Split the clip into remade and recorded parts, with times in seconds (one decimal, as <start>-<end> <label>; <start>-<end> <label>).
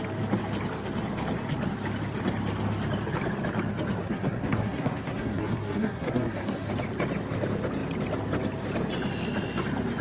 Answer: 0.0-4.0 recorded; 4.0-6.7 remade; 6.7-10.0 recorded